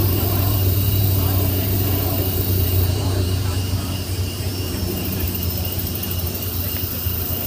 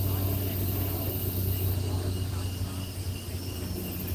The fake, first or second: first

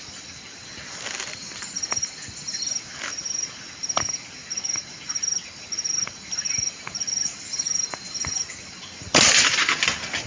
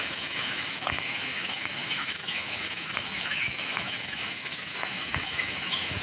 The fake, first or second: second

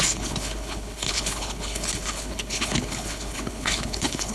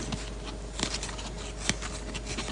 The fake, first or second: first